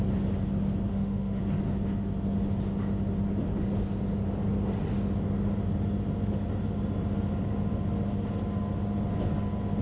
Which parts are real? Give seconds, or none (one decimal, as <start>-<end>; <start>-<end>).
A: 0.0-0.9; 1.4-9.8